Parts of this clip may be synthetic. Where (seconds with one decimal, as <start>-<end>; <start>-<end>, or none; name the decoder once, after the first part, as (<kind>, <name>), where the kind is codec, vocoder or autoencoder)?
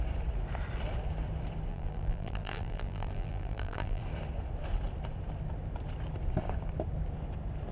1.7-4.0 (vocoder, BigVGAN v2)